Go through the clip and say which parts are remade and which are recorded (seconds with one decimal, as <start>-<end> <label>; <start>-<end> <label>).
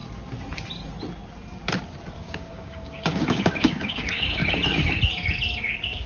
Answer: 0.0-2.2 recorded; 2.2-4.4 remade; 4.4-5.6 recorded; 5.6-6.1 remade